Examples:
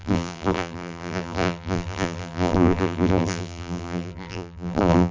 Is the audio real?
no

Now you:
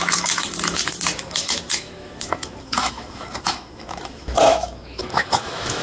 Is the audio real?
no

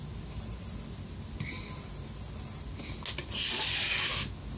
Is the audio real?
yes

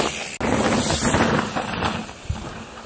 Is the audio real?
yes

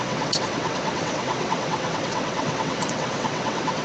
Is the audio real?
no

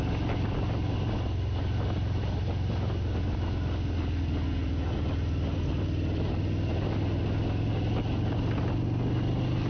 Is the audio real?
yes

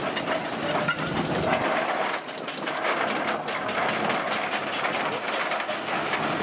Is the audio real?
yes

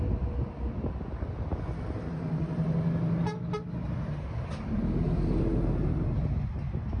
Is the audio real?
yes